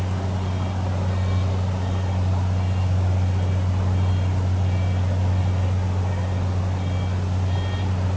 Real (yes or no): yes